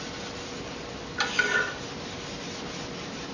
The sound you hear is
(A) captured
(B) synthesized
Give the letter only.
A